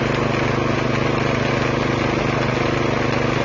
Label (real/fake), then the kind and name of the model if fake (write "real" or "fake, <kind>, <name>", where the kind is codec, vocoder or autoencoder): real